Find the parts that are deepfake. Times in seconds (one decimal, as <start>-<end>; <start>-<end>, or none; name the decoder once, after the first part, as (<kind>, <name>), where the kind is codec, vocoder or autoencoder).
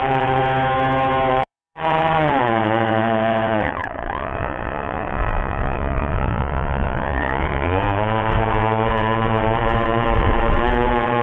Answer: 0.0-0.4 (vocoder, WaveNeXt); 1.3-11.2